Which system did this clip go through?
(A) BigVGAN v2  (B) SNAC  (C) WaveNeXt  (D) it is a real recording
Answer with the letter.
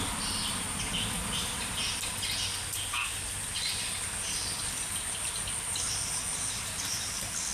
D